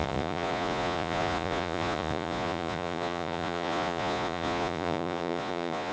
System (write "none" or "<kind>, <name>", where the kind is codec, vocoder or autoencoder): vocoder, Vocos